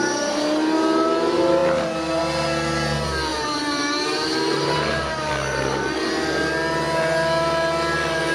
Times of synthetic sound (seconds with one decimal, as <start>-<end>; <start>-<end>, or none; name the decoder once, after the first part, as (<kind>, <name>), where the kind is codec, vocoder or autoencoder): 3.3-5.3 (vocoder, BigVGAN v2)